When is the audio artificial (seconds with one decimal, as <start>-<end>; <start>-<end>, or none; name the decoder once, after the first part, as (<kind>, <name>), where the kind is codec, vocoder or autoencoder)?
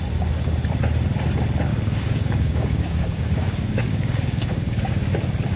1.7-4.9 (codec, DAC)